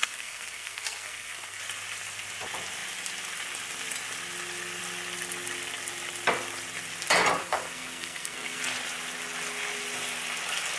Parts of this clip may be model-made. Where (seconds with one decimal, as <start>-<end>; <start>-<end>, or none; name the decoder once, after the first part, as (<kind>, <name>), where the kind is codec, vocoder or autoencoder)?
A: 0.0-1.6 (codec, SNAC); 7.4-8.6